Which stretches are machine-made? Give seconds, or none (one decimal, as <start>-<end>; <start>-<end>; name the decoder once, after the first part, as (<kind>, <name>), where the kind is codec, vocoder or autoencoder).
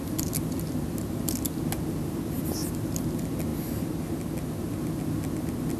none